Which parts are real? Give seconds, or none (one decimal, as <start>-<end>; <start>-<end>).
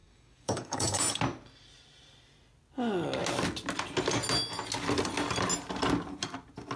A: 1.2-6.8